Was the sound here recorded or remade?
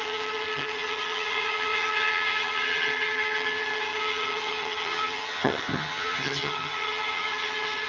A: remade